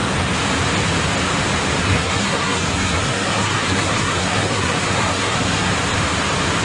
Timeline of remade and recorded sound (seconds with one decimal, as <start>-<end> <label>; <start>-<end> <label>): 0.0-1.8 recorded; 1.8-5.7 remade; 5.7-6.6 recorded